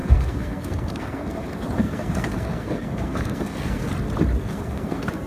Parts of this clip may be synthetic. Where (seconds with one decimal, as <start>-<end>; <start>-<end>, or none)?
0.0-3.9; 4.4-5.3